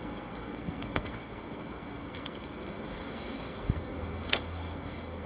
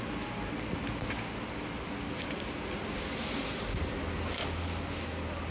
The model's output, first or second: first